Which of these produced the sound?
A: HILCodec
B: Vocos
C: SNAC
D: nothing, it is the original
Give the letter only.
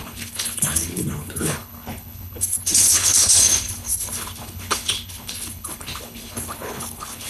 A